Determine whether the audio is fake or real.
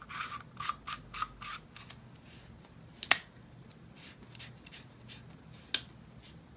real